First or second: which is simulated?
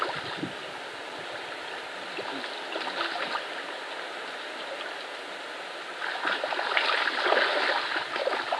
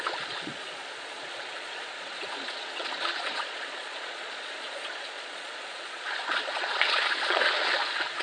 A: second